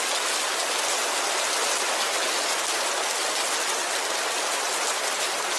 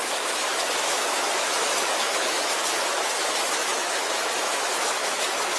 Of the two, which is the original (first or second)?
first